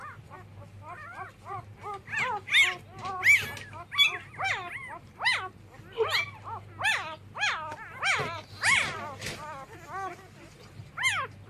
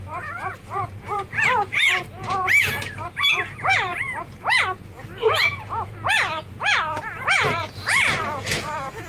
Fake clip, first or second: second